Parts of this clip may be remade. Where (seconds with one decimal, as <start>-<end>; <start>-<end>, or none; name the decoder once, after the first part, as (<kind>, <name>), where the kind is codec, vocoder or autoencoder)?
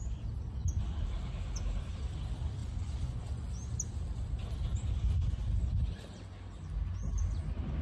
2.6-3.5 (vocoder, Vocos)